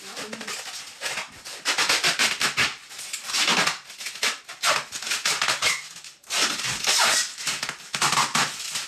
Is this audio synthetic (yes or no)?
no